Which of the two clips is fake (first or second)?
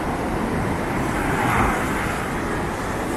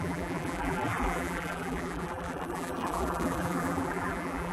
second